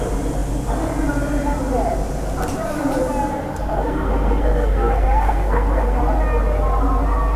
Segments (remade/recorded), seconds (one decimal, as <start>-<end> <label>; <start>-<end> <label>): 0.0-3.5 recorded; 3.5-6.0 remade; 6.0-7.4 recorded

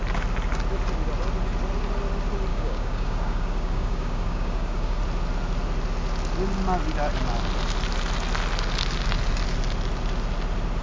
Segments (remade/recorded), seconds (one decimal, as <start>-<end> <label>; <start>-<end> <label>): 0.0-2.5 recorded; 2.5-5.0 remade; 5.0-10.8 recorded